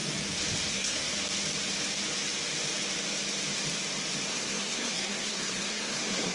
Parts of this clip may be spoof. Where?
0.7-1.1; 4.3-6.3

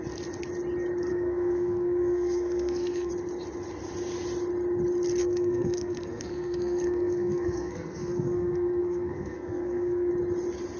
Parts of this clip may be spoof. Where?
1.1-3.1; 5.2-10.1

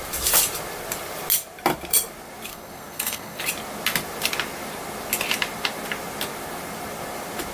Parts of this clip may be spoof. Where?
2.5-3.4

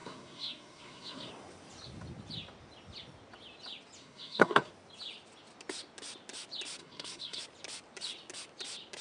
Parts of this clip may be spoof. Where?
0.0-1.3; 4.0-4.7; 6.8-7.4

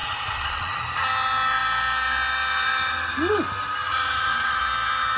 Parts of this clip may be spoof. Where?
0.0-0.8; 3.8-4.6

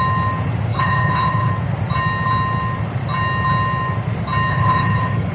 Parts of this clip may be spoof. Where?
0.7-1.5; 4.5-5.3